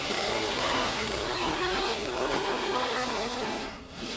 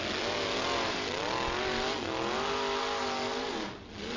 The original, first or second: second